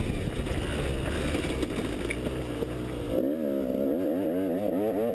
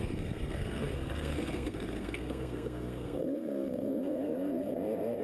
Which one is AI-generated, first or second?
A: second